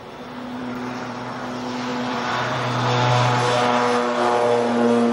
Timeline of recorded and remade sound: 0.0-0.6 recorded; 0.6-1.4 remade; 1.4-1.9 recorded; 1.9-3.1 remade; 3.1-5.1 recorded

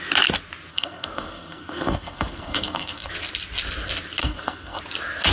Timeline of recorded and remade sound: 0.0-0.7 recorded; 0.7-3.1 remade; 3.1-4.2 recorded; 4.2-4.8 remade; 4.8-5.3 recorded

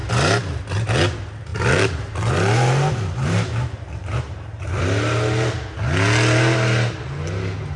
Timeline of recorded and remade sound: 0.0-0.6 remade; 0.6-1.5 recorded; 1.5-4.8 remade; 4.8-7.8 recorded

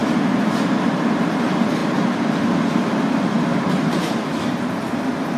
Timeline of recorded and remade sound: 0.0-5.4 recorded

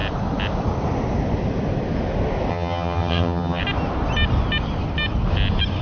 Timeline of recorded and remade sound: 0.0-2.5 recorded; 2.5-3.6 remade; 3.6-5.8 recorded

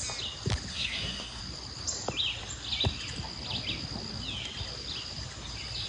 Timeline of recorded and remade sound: 0.0-0.7 recorded; 0.7-1.4 remade; 1.4-5.9 recorded